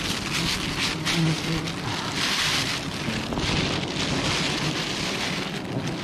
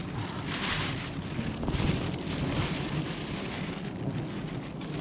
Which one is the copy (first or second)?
second